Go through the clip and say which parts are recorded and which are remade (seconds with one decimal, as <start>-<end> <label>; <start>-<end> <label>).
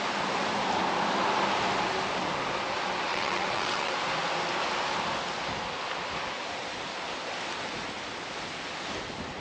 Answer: 0.0-3.1 recorded; 3.1-3.9 remade; 3.9-9.4 recorded